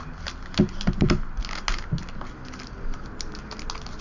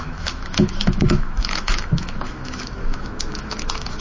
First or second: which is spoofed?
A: second